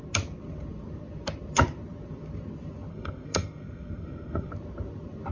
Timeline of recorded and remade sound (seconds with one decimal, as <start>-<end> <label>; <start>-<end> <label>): 0.0-2.9 recorded; 2.9-4.5 remade; 4.5-5.3 recorded